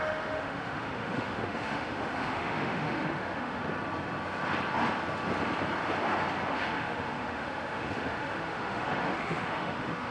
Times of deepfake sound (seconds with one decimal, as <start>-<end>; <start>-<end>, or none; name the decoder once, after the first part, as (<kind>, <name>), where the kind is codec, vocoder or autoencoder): 0.0-3.6 (autoencoder, DAC-VAE); 6.5-10.1